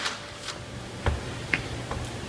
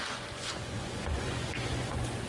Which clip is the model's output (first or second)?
second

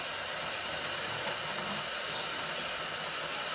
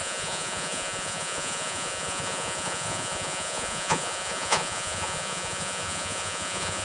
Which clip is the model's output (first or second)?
second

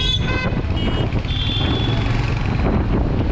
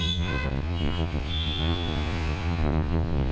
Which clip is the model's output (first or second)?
second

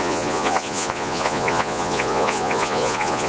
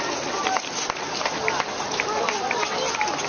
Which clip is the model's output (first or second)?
first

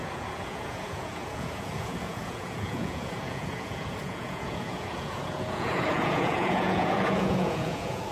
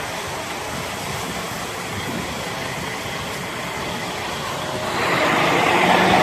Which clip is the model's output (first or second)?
first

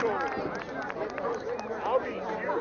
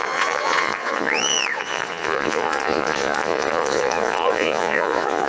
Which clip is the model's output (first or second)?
second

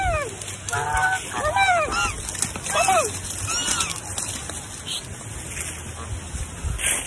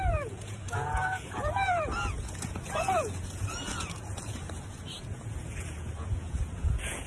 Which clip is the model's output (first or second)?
second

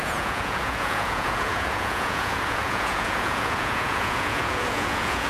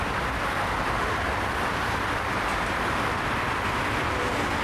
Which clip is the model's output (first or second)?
first